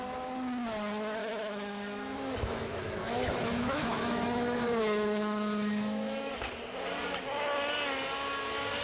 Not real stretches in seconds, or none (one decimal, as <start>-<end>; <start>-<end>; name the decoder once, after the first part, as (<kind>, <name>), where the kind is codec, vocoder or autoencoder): 1.2-6.3 (autoencoder, DAC-VAE)